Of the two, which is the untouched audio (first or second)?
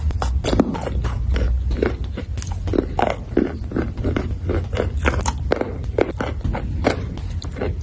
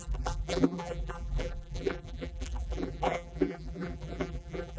first